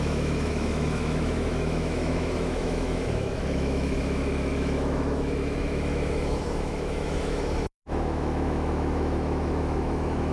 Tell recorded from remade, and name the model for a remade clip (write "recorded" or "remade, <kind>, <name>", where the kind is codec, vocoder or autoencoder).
remade, autoencoder, DAC-VAE